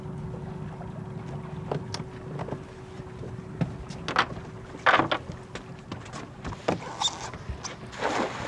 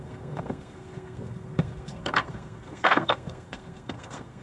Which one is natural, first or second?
first